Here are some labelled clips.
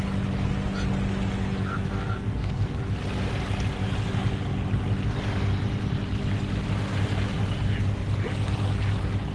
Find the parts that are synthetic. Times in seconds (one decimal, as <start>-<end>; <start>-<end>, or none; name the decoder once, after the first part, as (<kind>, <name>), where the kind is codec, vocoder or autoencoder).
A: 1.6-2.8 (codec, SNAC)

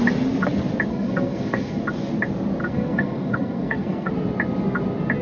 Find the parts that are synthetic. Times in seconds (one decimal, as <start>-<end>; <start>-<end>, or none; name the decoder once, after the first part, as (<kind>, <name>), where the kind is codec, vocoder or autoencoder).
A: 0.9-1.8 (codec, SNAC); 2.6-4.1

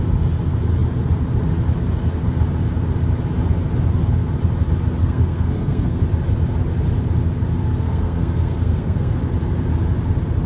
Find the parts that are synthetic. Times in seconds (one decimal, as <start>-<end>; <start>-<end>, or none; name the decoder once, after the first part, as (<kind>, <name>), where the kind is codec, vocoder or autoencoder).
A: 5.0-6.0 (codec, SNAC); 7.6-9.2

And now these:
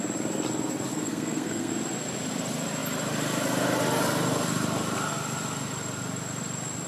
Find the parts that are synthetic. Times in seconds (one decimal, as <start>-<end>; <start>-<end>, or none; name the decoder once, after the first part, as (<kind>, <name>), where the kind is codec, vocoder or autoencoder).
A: 0.9-1.7 (codec, SNAC)

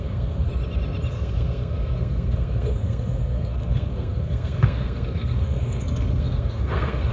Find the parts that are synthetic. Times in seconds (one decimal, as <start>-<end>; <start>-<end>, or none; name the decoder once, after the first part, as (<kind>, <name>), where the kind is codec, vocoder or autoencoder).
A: 0.0-0.5 (codec, SNAC); 1.1-7.1

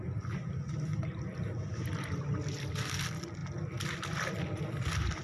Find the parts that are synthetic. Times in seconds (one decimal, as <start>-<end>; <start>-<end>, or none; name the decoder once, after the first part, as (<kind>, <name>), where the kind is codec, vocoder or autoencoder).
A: none

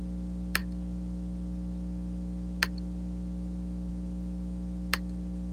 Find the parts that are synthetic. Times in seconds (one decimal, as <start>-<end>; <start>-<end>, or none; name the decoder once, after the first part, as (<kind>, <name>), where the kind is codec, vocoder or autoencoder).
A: none

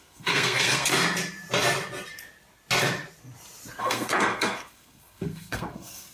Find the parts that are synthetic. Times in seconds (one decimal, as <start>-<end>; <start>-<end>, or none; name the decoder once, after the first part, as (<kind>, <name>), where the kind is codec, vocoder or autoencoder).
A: 0.0-0.9 (codec, SNAC); 3.8-6.1